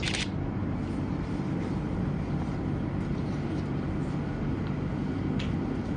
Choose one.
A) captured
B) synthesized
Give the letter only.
A